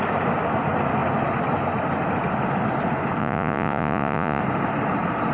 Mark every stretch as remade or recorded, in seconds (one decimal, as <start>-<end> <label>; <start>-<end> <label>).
0.0-3.2 recorded; 3.2-4.4 remade; 4.4-5.3 recorded